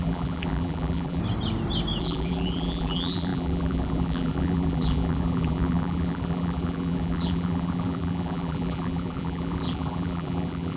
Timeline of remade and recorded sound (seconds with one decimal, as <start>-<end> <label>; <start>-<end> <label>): 0.0-1.2 remade; 1.2-2.0 recorded; 2.0-10.8 remade